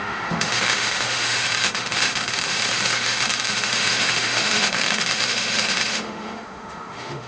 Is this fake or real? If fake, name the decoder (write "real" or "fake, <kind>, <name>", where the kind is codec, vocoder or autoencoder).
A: fake, autoencoder, DAC-VAE